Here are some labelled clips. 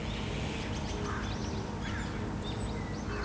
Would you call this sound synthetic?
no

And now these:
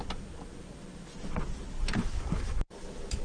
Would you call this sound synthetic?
no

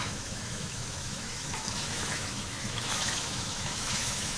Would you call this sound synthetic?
yes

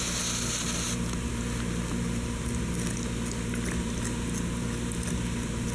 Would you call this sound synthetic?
no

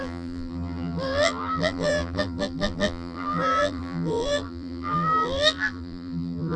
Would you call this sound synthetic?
yes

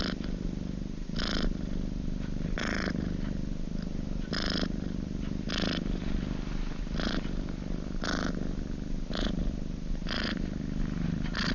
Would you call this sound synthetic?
no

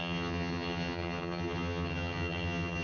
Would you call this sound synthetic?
yes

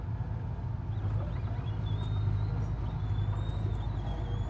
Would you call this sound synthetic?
no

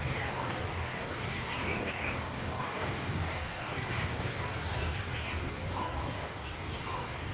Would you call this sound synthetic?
yes